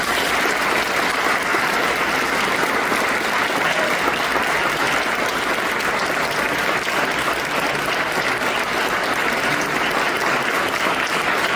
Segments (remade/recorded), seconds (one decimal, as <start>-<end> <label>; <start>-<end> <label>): 0.0-11.6 recorded